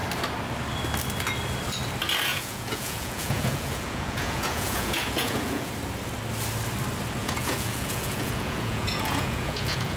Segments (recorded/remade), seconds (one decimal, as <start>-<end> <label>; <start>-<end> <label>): 0.0-2.3 recorded; 2.3-5.7 remade; 5.7-7.2 recorded; 7.2-10.0 remade